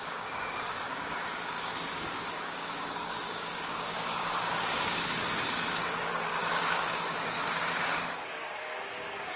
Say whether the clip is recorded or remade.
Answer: remade